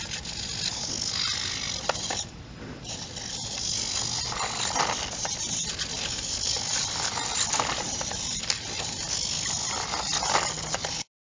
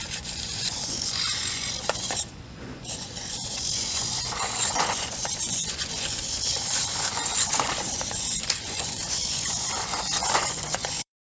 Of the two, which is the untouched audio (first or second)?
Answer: first